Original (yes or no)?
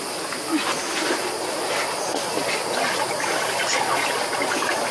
yes